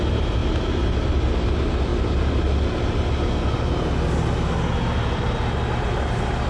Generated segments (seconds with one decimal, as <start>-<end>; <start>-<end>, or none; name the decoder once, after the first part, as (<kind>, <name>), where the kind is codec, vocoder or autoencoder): none